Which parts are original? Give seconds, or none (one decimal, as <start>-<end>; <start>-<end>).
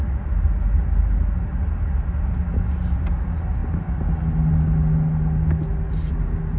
0.0-6.6